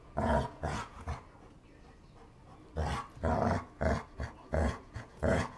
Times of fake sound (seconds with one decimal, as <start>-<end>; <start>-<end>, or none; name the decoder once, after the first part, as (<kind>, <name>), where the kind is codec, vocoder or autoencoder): 0.0-1.1 (vocoder, Vocos); 4.5-5.6